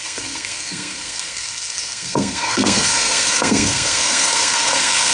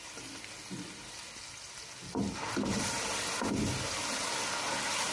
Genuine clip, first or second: second